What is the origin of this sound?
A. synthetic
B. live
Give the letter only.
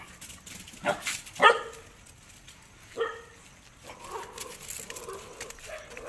B